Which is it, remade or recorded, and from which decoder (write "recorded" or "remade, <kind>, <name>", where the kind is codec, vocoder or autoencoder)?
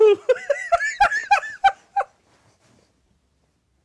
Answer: recorded